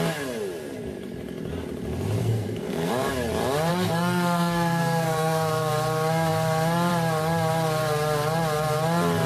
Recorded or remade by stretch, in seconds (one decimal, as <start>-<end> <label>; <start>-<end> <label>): 0.0-2.2 recorded; 2.2-2.9 remade; 2.9-3.7 recorded; 3.7-5.7 remade; 5.7-9.3 recorded